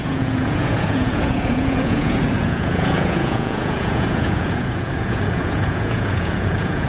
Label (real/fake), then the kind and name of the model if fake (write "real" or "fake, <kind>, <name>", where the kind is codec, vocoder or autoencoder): fake, vocoder, Vocos